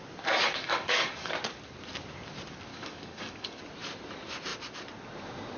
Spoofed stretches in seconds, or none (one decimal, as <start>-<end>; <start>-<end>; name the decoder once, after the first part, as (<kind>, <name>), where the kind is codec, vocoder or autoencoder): 0.4-1.3 (codec, DAC); 2.7-3.6

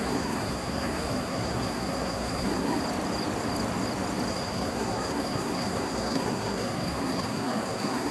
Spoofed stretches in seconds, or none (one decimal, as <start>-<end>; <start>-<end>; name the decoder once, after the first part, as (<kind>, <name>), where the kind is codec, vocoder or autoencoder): 0.0-2.8 (codec, SNAC); 4.3-8.1

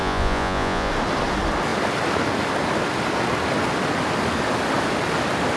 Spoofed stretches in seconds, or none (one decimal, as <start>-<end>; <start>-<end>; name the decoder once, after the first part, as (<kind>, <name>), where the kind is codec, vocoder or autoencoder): 0.0-0.9 (vocoder, Vocos)

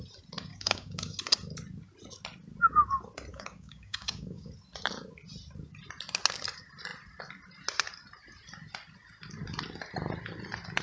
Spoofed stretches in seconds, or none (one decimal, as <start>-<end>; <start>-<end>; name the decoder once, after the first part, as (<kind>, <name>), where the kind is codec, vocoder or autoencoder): 0.5-1.2 (codec, DAC); 3.3-4.5

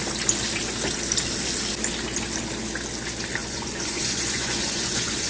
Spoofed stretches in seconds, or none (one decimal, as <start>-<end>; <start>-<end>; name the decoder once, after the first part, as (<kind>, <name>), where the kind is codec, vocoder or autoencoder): 3.4-5.3 (vocoder, Vocos)

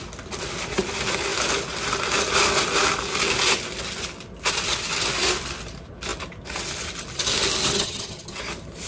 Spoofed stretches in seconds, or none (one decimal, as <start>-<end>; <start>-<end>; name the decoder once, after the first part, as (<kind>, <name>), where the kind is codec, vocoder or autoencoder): 7.7-8.4 (vocoder, HiFi-GAN)